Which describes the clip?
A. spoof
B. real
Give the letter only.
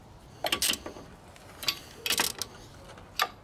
B